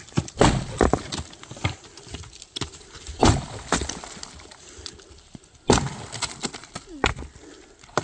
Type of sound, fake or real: real